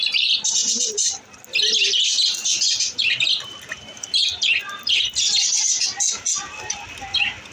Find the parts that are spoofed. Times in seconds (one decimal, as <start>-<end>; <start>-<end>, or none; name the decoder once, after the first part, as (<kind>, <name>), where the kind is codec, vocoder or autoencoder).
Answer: 0.6-1.1 (vocoder, BigVGAN v2); 2.4-3.3